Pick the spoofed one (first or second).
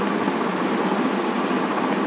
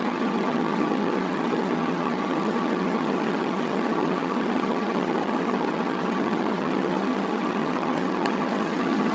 second